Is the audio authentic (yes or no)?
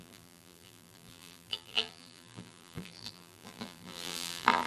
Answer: no